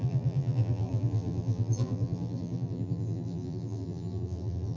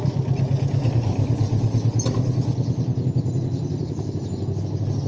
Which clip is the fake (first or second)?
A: first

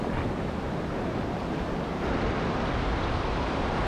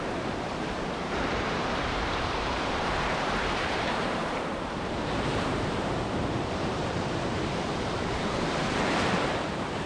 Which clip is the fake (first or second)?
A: second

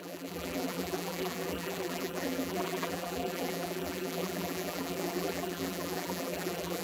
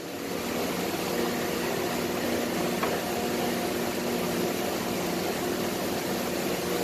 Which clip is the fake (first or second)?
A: first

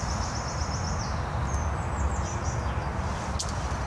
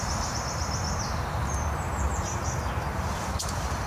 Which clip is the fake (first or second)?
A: second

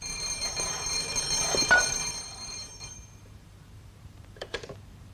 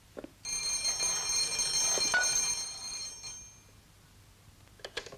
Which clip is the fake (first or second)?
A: first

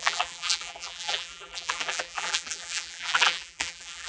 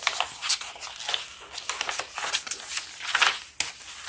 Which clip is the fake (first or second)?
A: first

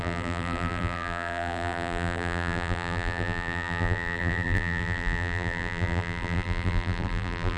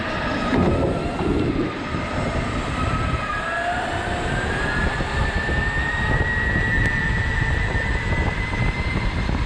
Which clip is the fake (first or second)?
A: first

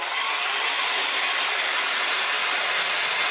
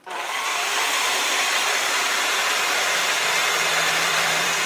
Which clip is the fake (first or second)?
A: second